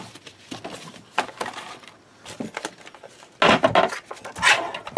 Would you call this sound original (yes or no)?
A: yes